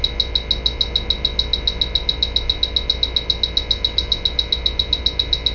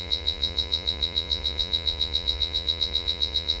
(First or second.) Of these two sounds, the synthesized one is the second